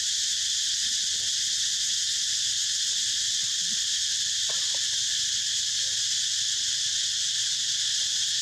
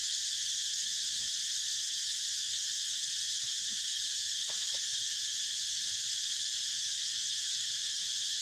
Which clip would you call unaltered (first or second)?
first